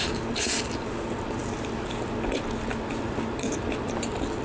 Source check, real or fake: real